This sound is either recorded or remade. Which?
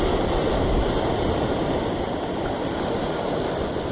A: recorded